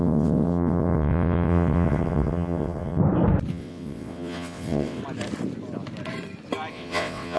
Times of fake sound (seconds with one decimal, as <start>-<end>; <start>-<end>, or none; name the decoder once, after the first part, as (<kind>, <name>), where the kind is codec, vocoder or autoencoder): 0.0-3.0 (vocoder, WaveNeXt); 3.5-5.0; 6.7-7.4